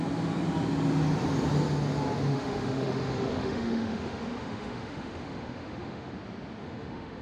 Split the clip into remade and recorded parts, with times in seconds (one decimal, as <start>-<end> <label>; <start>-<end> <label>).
0.0-2.3 recorded; 2.3-6.1 remade; 6.1-6.6 recorded; 6.6-7.2 remade